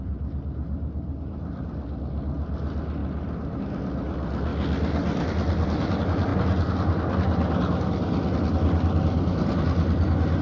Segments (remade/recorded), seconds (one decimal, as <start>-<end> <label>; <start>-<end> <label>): 0.0-10.4 recorded